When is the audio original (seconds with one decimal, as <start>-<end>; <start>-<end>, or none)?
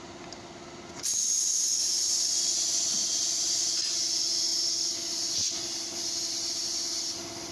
0.0-7.5